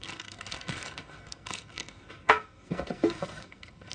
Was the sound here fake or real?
fake